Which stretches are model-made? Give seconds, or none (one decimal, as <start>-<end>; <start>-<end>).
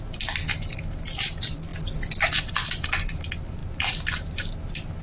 3.6-4.5